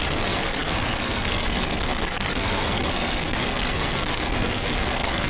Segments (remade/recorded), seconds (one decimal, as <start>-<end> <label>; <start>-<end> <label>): 0.0-5.3 remade